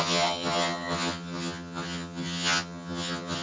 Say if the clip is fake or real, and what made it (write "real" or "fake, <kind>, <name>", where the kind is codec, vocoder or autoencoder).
fake, vocoder, HiFi-GAN